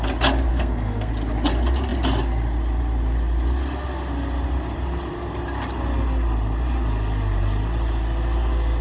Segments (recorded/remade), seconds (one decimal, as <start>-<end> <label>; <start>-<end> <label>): 0.0-0.5 recorded; 0.5-1.1 remade; 1.1-8.8 recorded